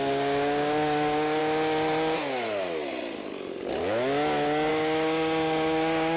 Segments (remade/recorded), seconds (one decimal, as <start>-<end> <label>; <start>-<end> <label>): 0.0-1.4 remade; 1.4-4.7 recorded; 4.7-6.2 remade